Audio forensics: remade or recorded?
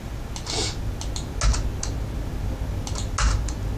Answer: recorded